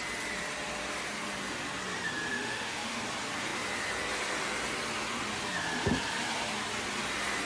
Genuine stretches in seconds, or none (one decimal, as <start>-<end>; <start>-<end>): 0.0-2.3; 3.0-7.5